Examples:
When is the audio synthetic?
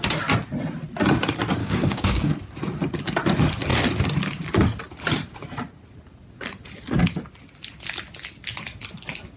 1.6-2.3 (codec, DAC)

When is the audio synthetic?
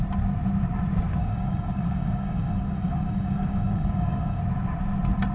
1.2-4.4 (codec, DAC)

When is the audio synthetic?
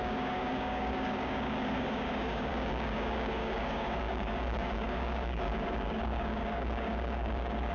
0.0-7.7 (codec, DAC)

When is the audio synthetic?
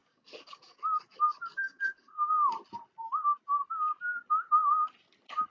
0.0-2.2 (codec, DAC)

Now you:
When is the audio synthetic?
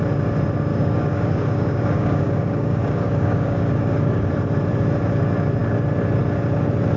0.7-4.3 (codec, DAC)